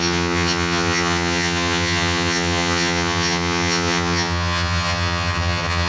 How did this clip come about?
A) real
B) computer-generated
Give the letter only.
B